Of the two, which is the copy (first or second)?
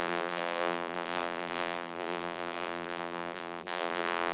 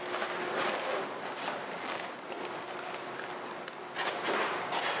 first